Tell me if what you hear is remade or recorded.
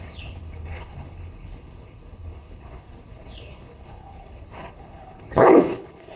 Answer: remade